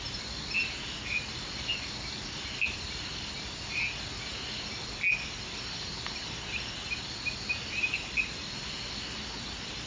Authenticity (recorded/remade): recorded